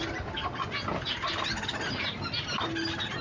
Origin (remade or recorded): recorded